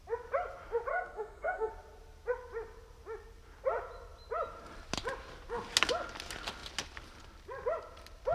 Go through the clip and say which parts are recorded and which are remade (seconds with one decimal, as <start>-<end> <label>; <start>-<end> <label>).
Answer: 0.0-0.9 recorded; 0.9-1.7 remade; 1.7-8.3 recorded